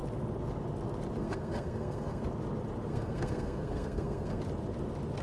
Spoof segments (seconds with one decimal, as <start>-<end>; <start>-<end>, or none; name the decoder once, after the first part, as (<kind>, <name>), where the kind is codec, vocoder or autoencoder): 1.2-2.2 (codec, SNAC); 2.9-4.4